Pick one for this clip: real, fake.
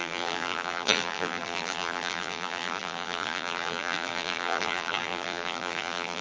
fake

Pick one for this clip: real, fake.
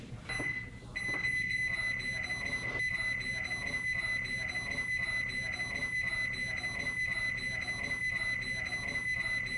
real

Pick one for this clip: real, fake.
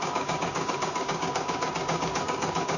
fake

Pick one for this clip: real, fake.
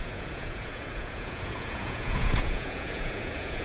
fake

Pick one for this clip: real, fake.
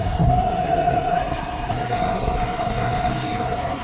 fake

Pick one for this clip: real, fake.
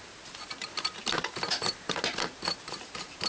fake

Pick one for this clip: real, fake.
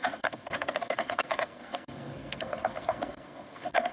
fake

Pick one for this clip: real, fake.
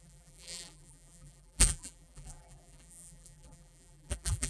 fake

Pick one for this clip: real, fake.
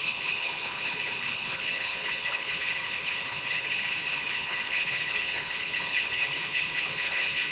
fake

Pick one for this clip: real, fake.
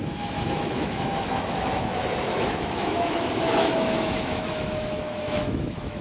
fake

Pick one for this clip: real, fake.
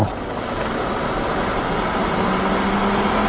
real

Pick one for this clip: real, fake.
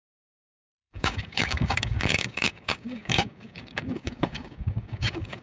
fake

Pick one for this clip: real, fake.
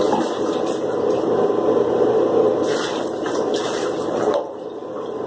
fake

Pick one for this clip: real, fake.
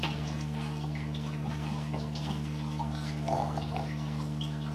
fake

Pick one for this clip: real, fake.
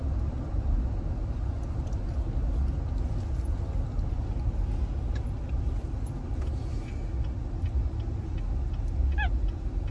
real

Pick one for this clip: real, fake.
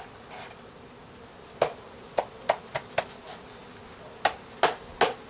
real